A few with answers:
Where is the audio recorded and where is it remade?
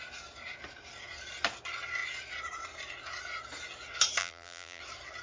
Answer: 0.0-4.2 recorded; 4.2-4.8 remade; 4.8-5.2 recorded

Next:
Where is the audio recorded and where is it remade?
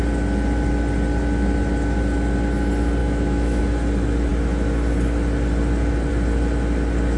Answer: 0.0-3.0 recorded; 3.0-3.6 remade; 3.6-7.2 recorded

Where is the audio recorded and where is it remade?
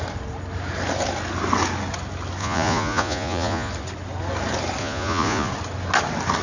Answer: 0.0-2.4 recorded; 2.4-3.7 remade; 3.7-4.8 recorded; 4.8-5.5 remade; 5.5-6.4 recorded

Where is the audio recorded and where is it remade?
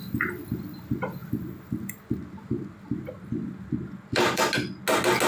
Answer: 0.0-1.2 recorded; 1.2-4.4 remade; 4.4-5.3 recorded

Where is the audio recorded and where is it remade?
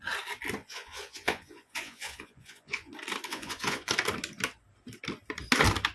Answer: 0.0-0.6 recorded; 0.6-2.9 remade; 2.9-3.3 recorded; 3.3-3.9 remade; 3.9-5.9 recorded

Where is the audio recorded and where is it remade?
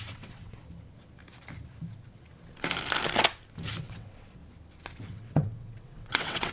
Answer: 0.0-0.6 remade; 0.6-3.8 recorded; 3.8-4.4 remade; 4.4-5.0 recorded; 5.0-6.5 remade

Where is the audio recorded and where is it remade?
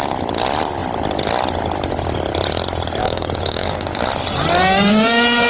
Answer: 0.0-3.0 recorded; 3.0-4.0 remade; 4.0-5.5 recorded